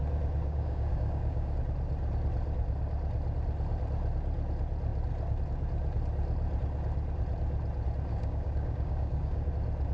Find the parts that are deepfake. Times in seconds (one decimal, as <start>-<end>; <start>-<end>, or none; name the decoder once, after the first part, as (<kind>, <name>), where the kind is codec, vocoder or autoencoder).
0.4-1.6 (codec, DAC); 8.1-9.5